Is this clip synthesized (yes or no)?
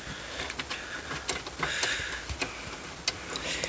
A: no